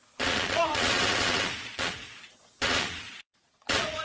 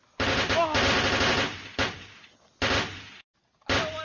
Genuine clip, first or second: second